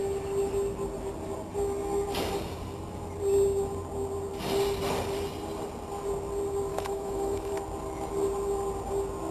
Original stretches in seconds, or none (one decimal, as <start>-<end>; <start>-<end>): 0.0-6.7; 7.5-9.3